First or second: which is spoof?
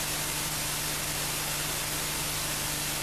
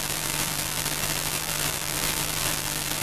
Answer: second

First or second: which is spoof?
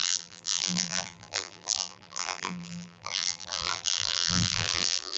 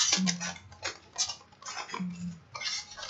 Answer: first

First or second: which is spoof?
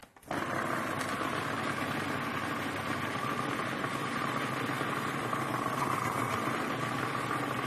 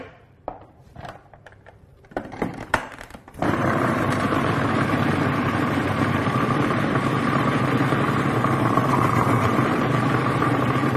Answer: second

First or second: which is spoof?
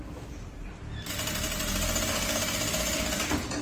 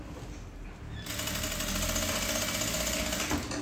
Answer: first